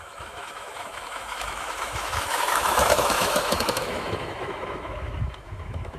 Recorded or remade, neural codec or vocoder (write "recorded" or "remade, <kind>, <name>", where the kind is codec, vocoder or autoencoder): remade, autoencoder, DAC-VAE